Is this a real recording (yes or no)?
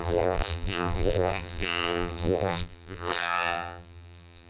no